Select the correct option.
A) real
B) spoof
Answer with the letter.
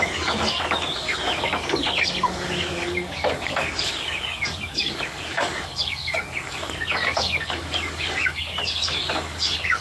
B